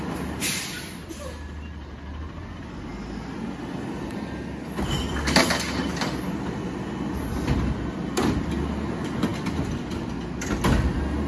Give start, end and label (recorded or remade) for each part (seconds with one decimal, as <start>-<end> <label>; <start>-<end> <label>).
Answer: 0.0-11.3 recorded